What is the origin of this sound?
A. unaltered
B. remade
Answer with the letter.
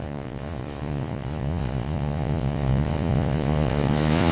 B